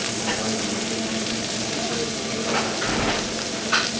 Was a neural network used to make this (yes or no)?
no